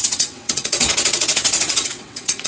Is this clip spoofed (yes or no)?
yes